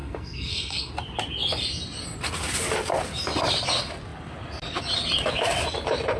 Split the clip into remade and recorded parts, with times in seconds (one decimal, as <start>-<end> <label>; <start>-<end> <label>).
0.0-0.9 remade; 0.9-6.2 recorded